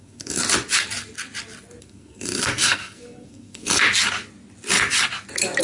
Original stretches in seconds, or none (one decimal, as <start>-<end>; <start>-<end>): 0.4-1.8; 3.8-5.6